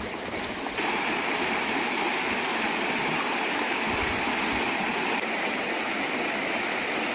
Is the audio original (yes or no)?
yes